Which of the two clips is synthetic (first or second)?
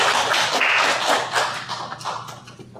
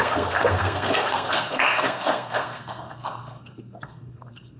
second